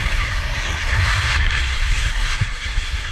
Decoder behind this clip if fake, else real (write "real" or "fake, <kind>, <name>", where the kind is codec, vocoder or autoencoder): fake, codec, SNAC